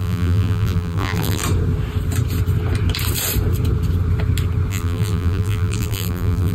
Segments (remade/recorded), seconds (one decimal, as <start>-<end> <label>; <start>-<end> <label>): 0.0-1.4 remade; 1.4-4.7 recorded; 4.7-6.5 remade

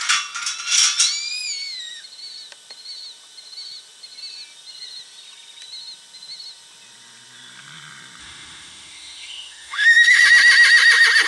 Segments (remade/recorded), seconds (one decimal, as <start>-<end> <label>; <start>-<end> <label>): 0.0-8.2 recorded; 8.2-10.2 remade; 10.2-11.3 recorded